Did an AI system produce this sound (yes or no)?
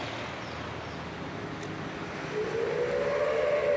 no